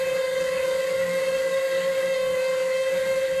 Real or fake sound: fake